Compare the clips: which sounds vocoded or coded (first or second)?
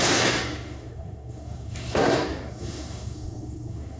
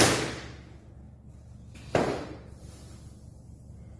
first